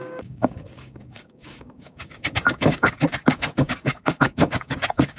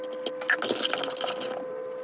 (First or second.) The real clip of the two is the second